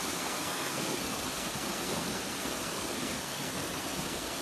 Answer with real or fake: fake